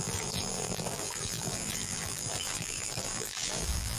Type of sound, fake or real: fake